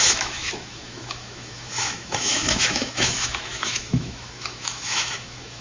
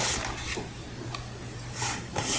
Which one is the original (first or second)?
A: second